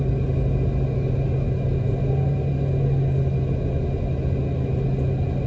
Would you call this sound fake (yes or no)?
no